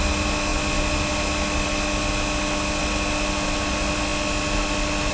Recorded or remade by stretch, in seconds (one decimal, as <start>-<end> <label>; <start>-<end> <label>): 0.0-5.1 recorded